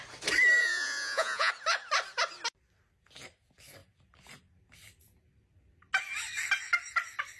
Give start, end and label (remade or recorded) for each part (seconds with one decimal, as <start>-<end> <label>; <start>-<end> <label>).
0.0-0.6 recorded; 0.6-1.5 remade; 1.5-7.4 recorded